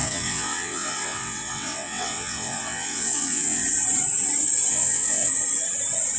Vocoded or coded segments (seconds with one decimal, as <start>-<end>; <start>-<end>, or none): 0.0-3.6; 4.7-5.3